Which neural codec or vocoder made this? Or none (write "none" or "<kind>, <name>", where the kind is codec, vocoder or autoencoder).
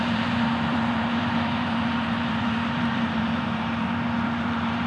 vocoder, BigVGAN v2